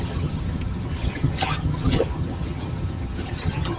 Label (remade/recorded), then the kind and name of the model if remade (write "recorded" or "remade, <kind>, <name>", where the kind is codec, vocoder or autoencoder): remade, vocoder, HiFi-GAN